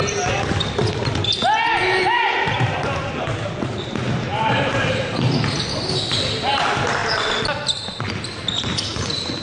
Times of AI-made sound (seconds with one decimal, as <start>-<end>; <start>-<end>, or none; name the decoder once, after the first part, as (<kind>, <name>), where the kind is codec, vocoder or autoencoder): none